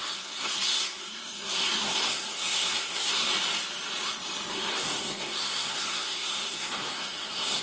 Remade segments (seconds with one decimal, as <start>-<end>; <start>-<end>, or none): 0.0-3.3; 4.5-7.6